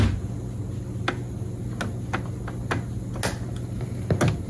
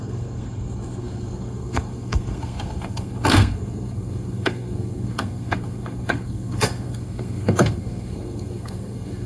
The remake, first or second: second